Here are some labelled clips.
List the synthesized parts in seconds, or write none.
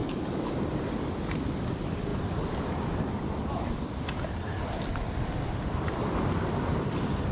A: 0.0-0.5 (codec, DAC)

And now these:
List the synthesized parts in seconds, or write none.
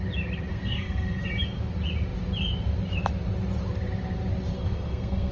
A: 0.5-1.3 (codec, SNAC); 4.5-5.3